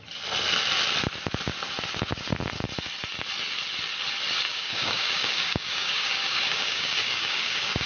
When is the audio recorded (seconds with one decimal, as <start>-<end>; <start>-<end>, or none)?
0.0-4.5